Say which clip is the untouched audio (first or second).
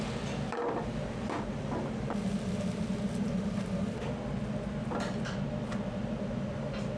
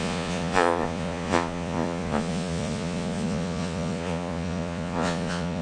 first